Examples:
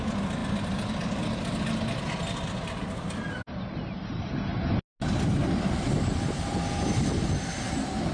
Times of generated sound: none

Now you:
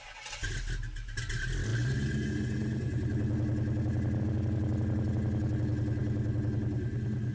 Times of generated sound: none

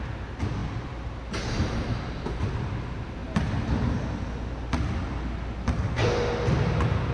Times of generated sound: 3.2-3.9 (vocoder, BigVGAN v2)

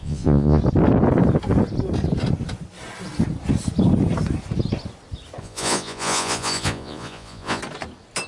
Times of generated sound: 0.0-0.6 (vocoder, Vocos); 5.4-7.6

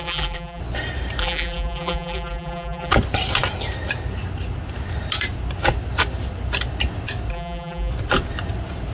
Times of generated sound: 0.0-0.6 (vocoder, BigVGAN v2); 1.2-2.9; 7.3-7.9